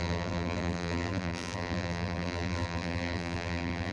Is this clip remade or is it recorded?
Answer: remade